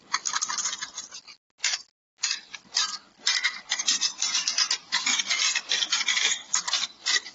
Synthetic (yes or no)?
no